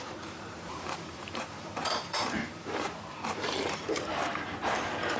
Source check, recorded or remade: remade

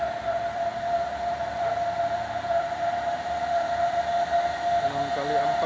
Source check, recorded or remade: recorded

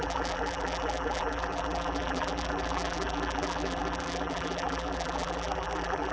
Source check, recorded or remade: remade